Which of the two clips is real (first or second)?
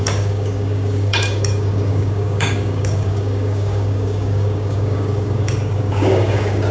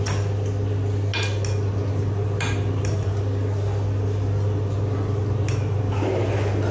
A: second